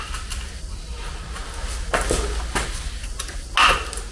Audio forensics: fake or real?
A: real